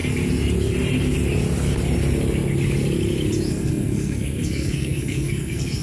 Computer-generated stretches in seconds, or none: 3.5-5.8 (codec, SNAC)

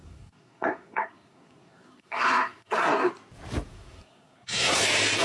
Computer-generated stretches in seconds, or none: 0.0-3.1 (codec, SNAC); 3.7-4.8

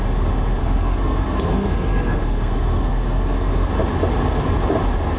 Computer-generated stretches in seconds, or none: 0.6-3.7 (codec, SNAC)

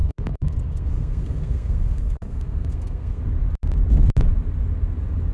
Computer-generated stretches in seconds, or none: 0.0-3.2 (codec, SNAC)

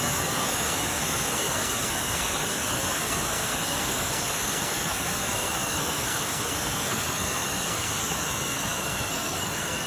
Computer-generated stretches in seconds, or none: 0.0-9.9 (codec, SNAC)

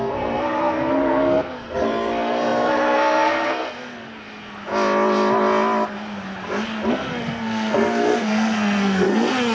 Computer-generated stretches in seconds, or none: 0.0-4.1 (codec, SNAC); 6.9-9.5

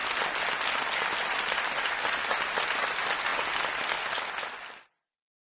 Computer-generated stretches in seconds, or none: none